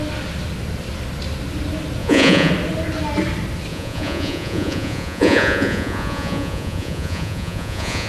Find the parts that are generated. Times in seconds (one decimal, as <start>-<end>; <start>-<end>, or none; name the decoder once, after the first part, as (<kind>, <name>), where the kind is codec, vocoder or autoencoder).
2.0-2.5 (vocoder, Vocos); 3.7-8.1